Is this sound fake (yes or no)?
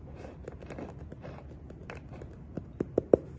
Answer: no